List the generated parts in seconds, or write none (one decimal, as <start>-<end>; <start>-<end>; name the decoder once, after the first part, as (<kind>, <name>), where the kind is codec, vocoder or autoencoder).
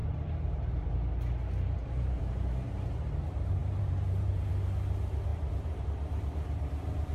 0.0-0.9 (vocoder, BigVGAN v2); 1.8-2.9; 3.6-4.5; 5.3-5.8